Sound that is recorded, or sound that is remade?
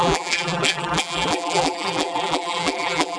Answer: remade